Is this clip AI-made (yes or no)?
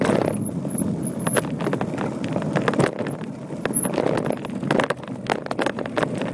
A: no